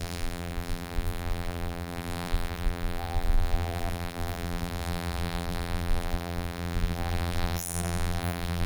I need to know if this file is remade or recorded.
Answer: remade